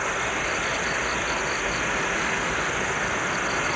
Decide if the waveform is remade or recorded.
recorded